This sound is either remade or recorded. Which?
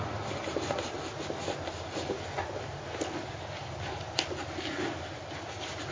recorded